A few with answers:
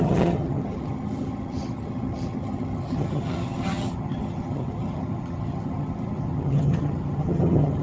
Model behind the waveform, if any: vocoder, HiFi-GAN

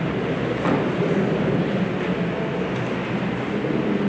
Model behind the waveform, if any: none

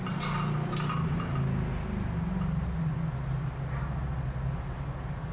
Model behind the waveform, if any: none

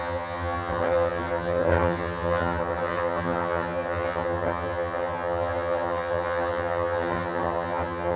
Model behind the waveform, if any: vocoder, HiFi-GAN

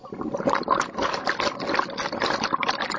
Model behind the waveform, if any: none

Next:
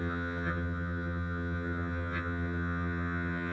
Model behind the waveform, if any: vocoder, HiFi-GAN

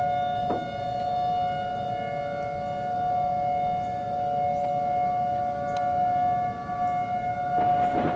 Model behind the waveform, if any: none